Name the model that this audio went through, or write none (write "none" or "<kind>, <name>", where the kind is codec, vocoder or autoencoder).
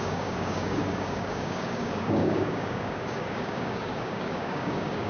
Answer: codec, DAC